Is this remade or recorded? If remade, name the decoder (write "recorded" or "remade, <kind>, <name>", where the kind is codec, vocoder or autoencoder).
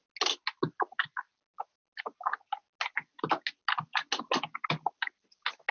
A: recorded